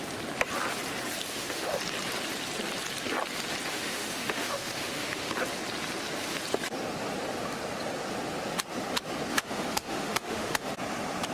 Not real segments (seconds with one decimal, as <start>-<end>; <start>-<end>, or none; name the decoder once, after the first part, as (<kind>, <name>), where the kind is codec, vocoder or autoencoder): 1.3-1.8 (autoencoder, DAC-VAE); 3.7-5.3; 9.3-10.7